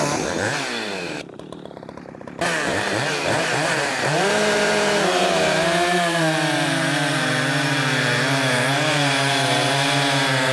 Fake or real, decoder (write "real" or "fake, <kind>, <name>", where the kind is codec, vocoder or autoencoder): fake, vocoder, BigVGAN v2